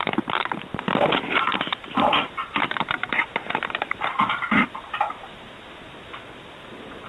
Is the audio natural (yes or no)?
yes